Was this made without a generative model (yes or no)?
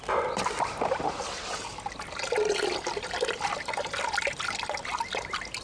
yes